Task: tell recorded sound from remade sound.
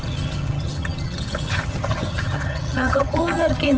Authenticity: remade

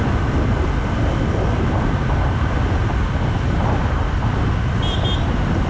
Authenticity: recorded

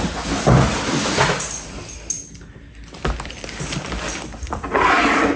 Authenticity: recorded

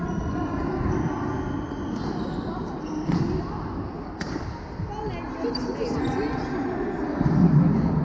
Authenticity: recorded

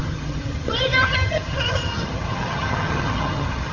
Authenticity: remade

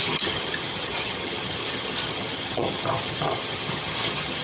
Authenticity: remade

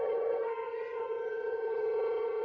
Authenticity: remade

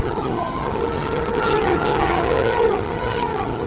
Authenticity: remade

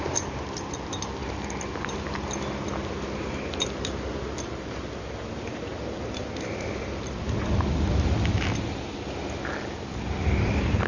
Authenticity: recorded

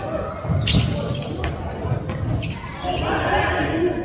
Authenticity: recorded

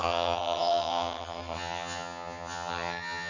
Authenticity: remade